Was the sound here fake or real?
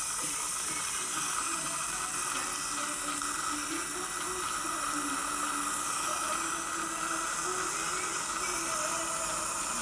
real